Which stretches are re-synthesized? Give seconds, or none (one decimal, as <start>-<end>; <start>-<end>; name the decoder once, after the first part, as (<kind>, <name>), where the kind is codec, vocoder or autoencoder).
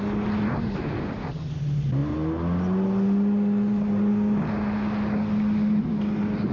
none